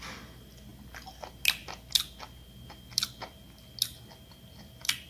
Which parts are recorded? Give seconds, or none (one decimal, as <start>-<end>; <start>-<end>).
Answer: 0.0-5.1